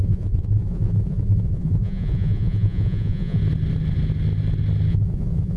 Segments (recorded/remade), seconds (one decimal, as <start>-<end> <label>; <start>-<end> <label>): 0.0-3.4 remade; 3.4-4.9 recorded; 4.9-5.6 remade